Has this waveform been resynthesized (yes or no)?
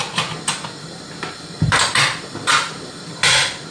no